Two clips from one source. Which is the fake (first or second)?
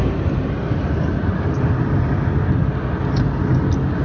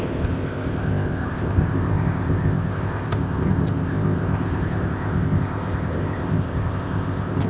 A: second